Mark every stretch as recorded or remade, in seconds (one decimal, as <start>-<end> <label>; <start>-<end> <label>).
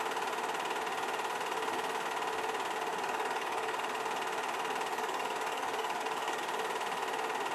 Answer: 0.0-2.9 recorded; 2.9-3.8 remade; 3.8-4.9 recorded; 4.9-6.4 remade; 6.4-7.5 recorded